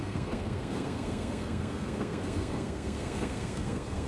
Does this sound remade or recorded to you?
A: remade